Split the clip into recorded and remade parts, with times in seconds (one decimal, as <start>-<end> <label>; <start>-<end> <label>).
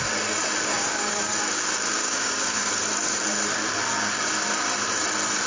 0.0-0.7 recorded; 0.7-1.3 remade; 1.3-2.0 recorded; 2.0-2.7 remade; 2.7-5.5 recorded